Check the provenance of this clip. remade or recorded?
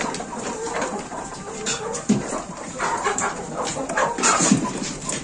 remade